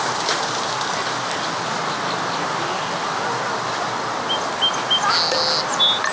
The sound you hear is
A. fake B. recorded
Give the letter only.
B